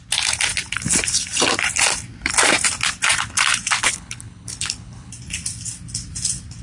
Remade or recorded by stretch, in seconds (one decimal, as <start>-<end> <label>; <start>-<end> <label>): 0.0-3.8 recorded; 3.8-5.1 remade; 5.1-6.6 recorded